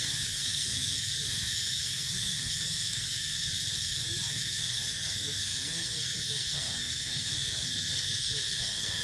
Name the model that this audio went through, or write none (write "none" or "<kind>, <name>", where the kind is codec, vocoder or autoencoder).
codec, SNAC